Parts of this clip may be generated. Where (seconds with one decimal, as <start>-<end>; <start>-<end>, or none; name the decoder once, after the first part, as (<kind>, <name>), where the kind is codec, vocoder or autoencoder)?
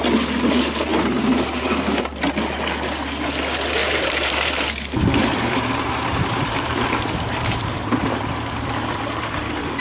0.9-2.3 (vocoder, BigVGAN v2); 3.8-8.7